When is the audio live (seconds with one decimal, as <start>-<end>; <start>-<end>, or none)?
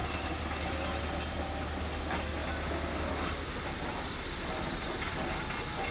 0.0-2.4; 4.1-5.9